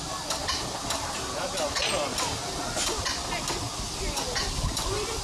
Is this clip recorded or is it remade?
recorded